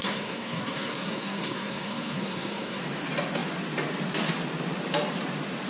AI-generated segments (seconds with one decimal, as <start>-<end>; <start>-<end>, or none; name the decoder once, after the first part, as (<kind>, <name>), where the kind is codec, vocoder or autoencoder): 0.0-2.8 (codec, SNAC)